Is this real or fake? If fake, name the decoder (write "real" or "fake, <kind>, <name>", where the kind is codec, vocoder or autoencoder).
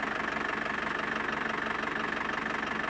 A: real